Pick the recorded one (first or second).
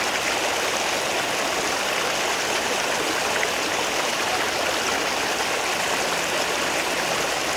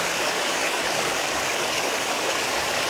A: first